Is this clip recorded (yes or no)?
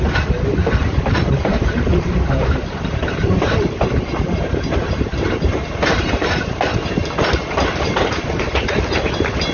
no